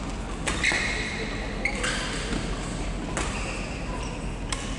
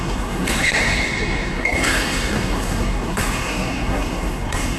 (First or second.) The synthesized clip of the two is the second